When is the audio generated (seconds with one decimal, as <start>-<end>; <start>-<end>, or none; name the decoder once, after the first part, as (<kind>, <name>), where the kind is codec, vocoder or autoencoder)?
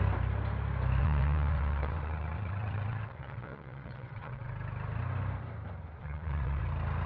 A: 1.0-4.5 (vocoder, WaveNeXt); 6.0-6.6